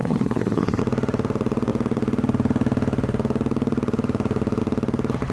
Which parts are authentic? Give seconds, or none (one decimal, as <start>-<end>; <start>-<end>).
0.8-5.3